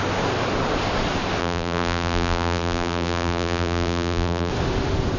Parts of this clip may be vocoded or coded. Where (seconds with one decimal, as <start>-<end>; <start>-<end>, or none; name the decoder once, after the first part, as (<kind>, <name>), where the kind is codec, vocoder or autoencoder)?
1.4-4.5 (vocoder, BigVGAN v2)